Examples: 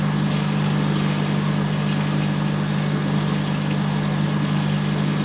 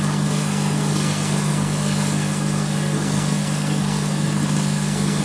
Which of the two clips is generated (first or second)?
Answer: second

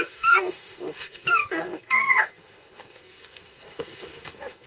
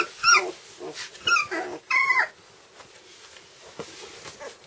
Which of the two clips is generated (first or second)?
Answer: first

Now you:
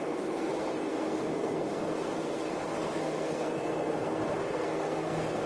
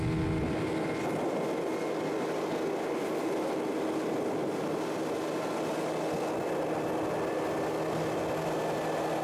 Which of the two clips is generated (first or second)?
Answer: first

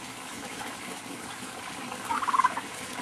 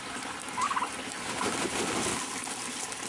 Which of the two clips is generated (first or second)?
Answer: first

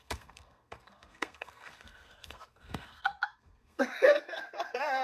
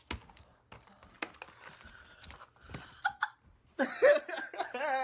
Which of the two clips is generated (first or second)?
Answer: first